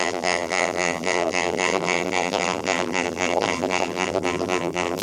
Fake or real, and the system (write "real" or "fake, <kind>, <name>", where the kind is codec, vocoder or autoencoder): fake, vocoder, BigVGAN v2